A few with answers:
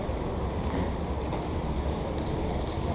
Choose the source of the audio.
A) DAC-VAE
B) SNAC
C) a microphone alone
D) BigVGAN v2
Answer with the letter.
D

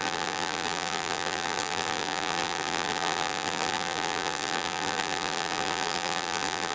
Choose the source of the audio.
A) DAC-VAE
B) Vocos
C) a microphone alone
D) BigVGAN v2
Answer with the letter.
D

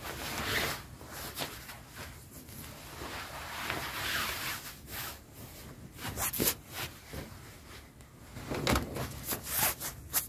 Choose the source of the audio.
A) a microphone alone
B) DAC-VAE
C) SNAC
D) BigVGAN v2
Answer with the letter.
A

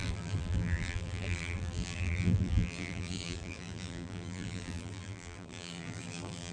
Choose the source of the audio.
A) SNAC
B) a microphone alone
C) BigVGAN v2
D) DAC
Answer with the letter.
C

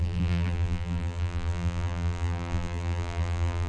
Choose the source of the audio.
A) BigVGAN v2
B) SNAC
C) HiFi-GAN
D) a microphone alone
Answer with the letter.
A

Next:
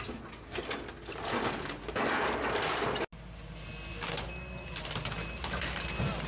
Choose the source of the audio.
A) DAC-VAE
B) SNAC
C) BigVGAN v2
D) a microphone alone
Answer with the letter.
D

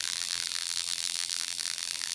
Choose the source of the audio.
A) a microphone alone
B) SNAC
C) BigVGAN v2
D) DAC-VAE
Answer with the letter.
C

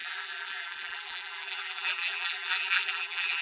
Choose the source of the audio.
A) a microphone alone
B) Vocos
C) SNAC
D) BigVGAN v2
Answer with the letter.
D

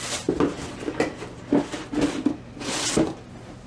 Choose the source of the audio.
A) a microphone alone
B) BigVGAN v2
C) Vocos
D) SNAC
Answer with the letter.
A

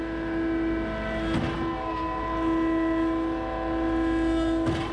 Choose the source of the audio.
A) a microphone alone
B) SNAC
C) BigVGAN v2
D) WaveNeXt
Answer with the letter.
A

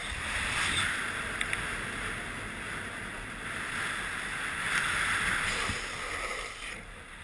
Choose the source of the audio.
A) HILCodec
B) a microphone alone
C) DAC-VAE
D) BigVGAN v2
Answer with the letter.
B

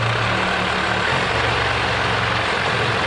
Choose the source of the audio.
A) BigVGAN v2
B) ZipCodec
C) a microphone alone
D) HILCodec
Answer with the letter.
C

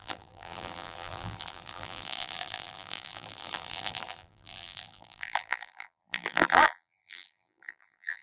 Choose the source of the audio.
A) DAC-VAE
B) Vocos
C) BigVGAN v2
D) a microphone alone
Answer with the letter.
C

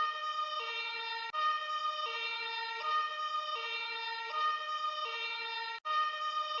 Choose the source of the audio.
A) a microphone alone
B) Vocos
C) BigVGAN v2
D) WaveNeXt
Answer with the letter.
A